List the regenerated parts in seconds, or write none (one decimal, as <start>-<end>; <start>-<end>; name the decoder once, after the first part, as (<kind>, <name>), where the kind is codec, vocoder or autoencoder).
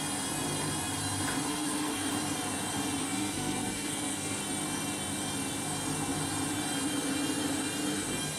1.5-2.1 (codec, SNAC); 3.0-4.4